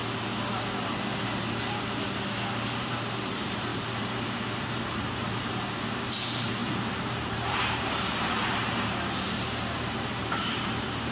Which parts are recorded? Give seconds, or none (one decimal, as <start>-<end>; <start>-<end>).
0.0-2.7